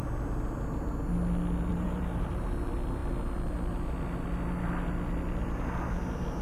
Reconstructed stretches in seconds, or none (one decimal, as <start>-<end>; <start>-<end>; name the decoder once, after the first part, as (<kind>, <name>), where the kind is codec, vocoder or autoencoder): 1.7-2.5 (vocoder, BigVGAN v2)